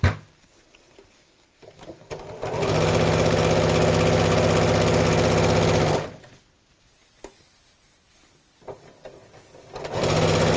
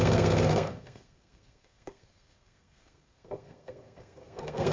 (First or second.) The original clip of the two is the first